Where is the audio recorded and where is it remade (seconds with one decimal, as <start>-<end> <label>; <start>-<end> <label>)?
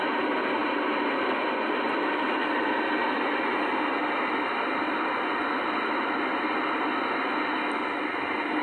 0.0-8.6 remade